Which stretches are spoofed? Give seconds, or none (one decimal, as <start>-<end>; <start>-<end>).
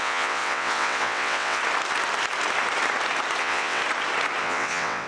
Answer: 0.0-1.6; 3.4-3.8; 4.4-5.1